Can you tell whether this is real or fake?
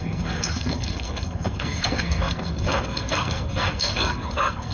fake